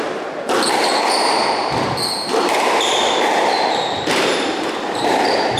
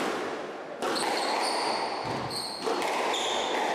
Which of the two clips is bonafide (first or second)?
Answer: second